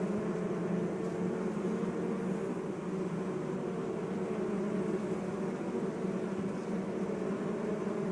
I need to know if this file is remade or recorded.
recorded